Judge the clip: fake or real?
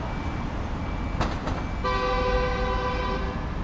real